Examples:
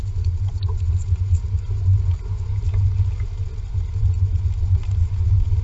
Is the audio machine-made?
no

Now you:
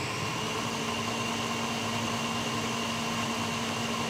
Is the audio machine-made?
no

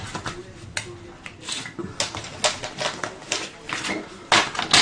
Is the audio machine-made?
no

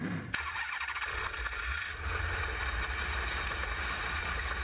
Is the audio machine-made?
no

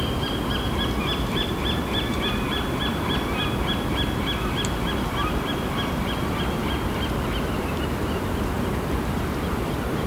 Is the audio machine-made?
no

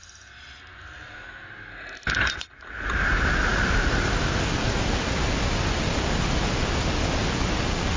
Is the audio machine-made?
no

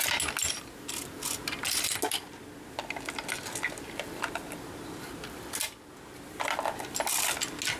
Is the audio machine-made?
no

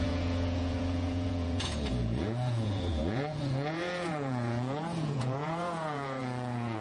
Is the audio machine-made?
yes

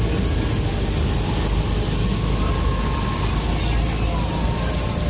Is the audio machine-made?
no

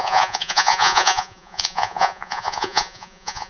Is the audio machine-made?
yes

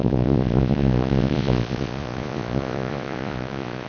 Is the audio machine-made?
yes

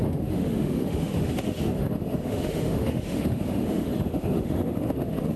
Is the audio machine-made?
yes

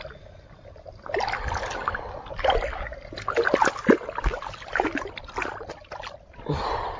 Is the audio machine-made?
no